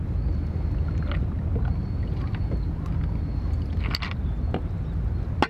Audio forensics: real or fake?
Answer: real